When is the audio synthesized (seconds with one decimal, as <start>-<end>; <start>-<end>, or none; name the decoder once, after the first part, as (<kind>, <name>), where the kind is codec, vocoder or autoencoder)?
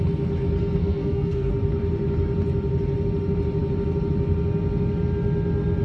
0.8-1.5 (codec, SNAC)